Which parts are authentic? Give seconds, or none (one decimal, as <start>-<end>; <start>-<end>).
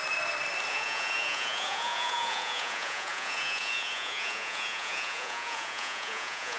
0.0-0.7